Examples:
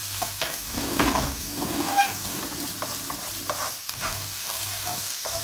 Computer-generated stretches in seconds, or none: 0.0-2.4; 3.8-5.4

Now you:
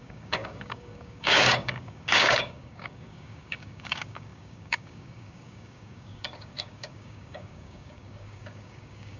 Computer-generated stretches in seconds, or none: 0.0-9.2

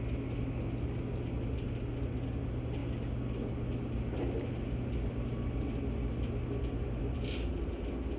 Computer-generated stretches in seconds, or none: none

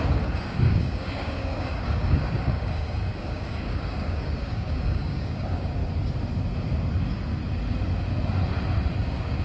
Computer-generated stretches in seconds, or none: 0.0-5.8; 9.0-9.4

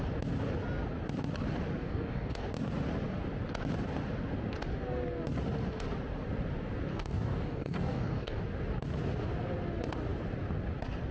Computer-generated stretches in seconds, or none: 1.8-2.4; 6.9-8.4

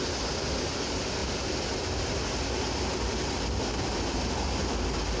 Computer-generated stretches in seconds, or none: none